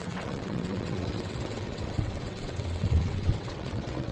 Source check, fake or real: fake